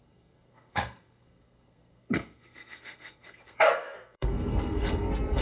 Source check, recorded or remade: remade